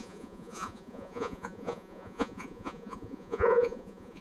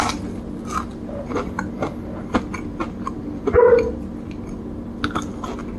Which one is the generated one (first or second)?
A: first